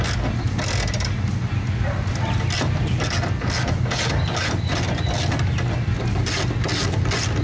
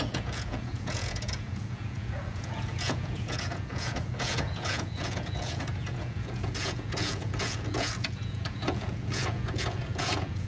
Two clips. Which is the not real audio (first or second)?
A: second